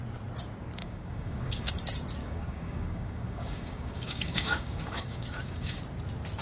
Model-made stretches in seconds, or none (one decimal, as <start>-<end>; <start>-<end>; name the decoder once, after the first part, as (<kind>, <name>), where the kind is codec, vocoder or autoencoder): 0.8-1.7 (codec, DAC); 2.2-5.8